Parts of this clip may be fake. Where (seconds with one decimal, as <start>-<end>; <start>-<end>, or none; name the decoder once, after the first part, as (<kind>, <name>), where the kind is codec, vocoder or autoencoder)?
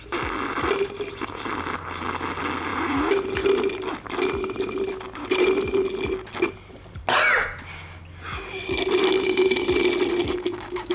10.2-10.9 (codec, DAC)